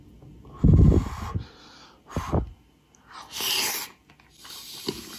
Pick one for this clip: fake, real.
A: real